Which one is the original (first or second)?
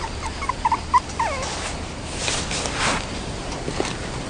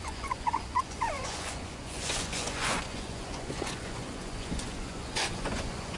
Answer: first